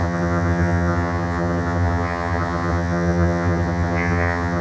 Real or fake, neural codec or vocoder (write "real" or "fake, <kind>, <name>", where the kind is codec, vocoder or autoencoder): fake, vocoder, HiFi-GAN